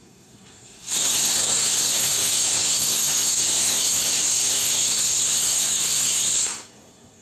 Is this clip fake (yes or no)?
yes